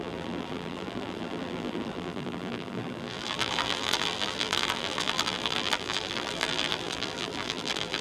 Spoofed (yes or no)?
yes